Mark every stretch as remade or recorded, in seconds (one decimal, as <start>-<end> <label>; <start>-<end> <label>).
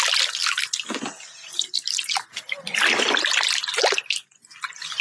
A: 0.0-5.0 recorded